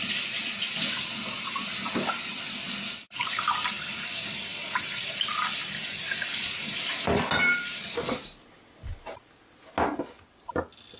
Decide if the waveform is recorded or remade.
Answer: recorded